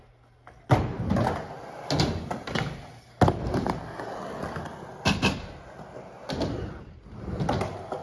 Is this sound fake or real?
real